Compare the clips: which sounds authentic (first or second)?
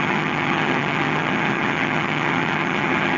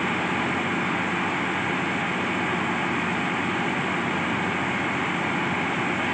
second